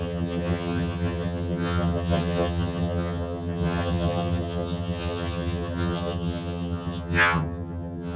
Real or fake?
fake